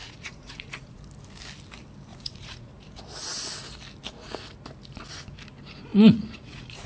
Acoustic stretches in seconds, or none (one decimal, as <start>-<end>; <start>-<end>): 1.0-2.1; 2.7-5.9